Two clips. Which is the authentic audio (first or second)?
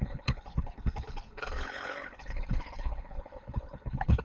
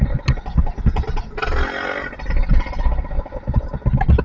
second